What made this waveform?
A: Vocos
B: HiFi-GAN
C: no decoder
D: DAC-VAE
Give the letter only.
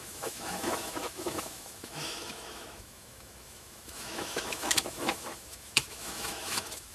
D